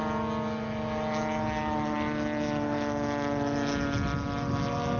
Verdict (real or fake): real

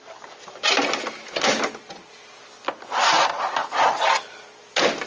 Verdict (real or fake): real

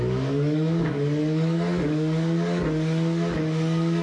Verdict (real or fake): fake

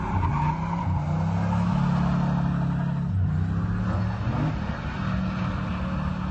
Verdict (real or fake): real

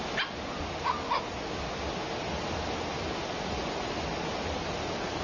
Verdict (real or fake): real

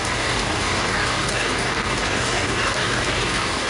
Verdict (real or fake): fake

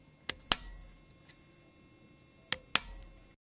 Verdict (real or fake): real